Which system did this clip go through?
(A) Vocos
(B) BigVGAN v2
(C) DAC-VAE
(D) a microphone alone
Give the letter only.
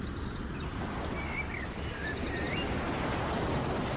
D